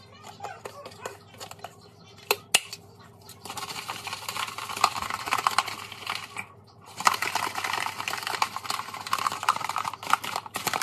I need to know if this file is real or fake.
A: real